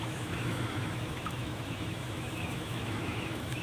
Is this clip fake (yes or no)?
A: yes